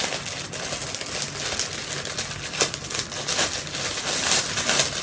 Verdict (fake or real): real